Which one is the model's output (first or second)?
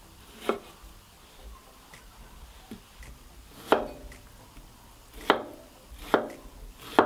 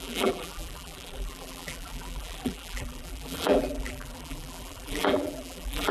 second